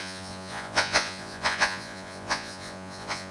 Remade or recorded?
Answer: remade